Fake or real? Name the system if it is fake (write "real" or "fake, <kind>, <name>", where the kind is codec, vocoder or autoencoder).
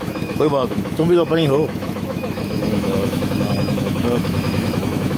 fake, autoencoder, DAC-VAE